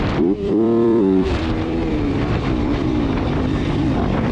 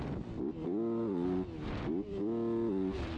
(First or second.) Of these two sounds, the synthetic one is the first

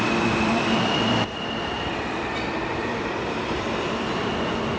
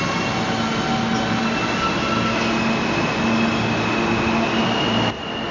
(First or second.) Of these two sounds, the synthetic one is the first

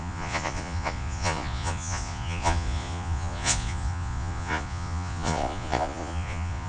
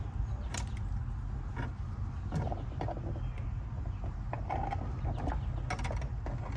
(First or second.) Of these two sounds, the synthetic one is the first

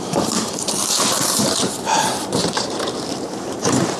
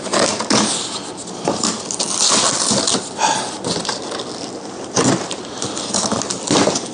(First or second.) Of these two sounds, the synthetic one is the first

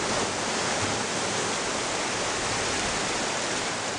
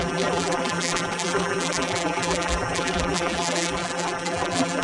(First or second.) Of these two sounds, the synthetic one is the second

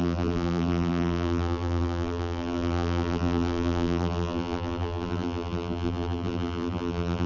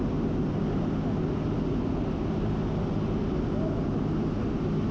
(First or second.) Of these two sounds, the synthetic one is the first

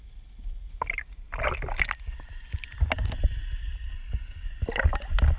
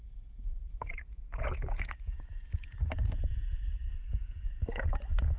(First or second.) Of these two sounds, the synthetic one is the second